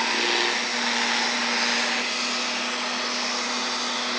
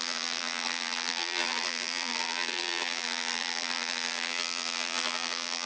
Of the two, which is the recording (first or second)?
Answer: first